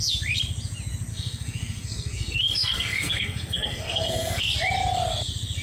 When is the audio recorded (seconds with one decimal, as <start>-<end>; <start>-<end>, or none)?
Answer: 0.0-1.1; 4.5-5.6